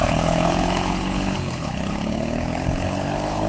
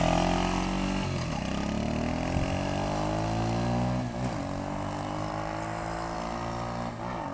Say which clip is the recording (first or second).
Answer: second